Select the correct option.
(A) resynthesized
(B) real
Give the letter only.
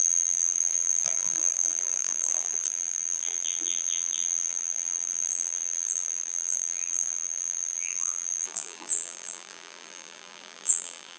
A